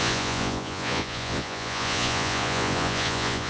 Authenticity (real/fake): fake